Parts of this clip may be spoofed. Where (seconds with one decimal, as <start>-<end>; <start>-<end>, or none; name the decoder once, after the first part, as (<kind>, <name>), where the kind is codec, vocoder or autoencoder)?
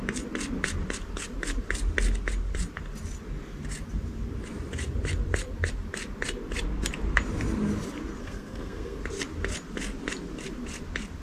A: 8.2-9.0 (codec, SNAC)